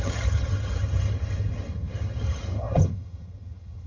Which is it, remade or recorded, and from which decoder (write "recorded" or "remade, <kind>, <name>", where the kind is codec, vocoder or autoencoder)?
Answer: remade, vocoder, HiFi-GAN